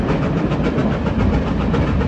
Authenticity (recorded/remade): recorded